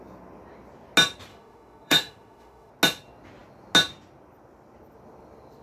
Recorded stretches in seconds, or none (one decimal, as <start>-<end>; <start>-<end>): 0.0-1.3; 2.7-5.6